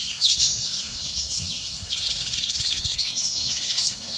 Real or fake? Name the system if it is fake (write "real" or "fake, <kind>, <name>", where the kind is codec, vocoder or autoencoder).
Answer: fake, codec, SNAC